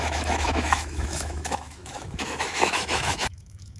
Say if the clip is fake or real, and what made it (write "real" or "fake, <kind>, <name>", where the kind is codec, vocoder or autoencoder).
fake, autoencoder, DAC-VAE